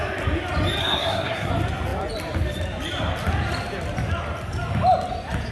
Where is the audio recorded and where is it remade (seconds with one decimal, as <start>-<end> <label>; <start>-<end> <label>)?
0.0-0.8 recorded; 0.8-1.5 remade; 1.5-5.5 recorded